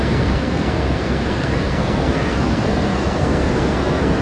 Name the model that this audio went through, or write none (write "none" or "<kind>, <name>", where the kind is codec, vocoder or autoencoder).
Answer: codec, SNAC